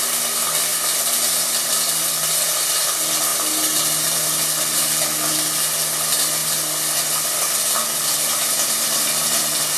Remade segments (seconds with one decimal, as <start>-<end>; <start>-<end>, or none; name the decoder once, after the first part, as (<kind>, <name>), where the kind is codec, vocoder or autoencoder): none

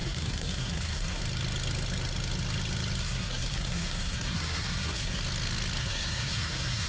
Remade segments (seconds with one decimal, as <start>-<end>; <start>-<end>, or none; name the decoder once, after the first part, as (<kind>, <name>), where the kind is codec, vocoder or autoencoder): 0.0-1.2 (codec, SNAC); 3.0-5.2; 5.8-6.9